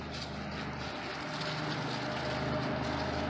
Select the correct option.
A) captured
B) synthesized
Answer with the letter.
A